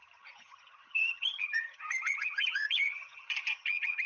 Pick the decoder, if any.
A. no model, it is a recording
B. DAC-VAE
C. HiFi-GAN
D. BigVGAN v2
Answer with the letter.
C